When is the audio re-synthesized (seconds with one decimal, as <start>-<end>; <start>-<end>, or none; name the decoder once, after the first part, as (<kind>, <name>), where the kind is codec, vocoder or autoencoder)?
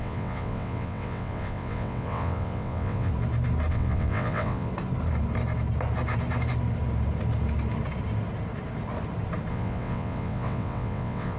0.0-3.1 (vocoder, WaveNeXt); 3.7-4.7; 9.5-11.4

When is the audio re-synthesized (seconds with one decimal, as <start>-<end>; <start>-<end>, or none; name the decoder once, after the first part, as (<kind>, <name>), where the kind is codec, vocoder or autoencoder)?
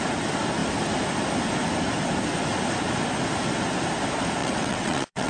4.4-5.3 (vocoder, WaveNeXt)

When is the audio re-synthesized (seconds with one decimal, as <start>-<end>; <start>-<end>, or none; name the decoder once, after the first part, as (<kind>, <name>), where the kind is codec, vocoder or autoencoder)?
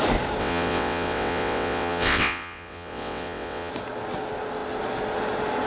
0.4-3.7 (vocoder, WaveNeXt)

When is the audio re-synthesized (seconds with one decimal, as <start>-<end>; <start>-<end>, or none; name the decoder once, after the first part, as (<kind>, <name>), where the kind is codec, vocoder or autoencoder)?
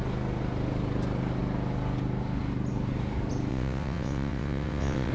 3.5-5.1 (vocoder, WaveNeXt)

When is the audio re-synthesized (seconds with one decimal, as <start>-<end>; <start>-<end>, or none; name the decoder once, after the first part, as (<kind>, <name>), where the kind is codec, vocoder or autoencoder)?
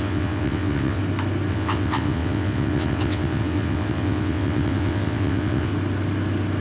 0.0-1.0 (vocoder, WaveNeXt); 1.5-5.7